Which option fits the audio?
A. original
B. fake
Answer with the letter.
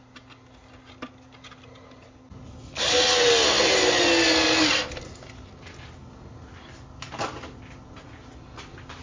A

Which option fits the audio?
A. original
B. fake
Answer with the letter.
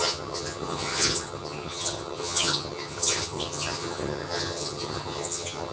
B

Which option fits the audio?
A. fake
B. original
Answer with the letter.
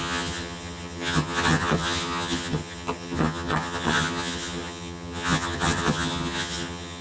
A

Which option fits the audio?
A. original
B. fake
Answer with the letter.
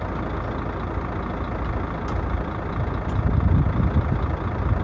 A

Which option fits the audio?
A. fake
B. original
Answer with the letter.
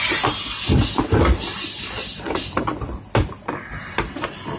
B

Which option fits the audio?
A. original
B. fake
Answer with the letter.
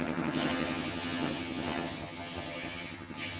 B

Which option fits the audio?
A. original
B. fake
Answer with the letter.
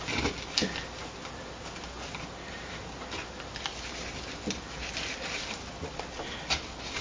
A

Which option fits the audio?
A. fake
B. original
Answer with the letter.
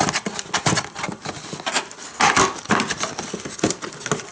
B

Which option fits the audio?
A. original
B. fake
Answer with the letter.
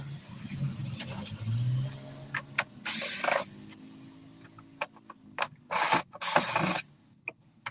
A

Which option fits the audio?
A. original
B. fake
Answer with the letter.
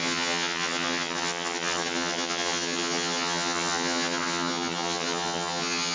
B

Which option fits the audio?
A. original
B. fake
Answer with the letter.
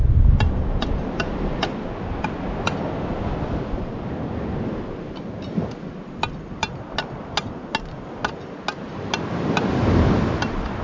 A